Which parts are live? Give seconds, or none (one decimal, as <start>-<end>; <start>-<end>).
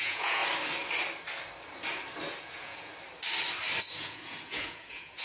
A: 0.4-2.4; 2.9-3.9